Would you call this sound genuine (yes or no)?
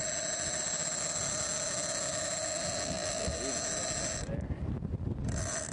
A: yes